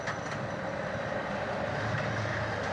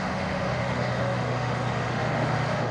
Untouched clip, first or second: first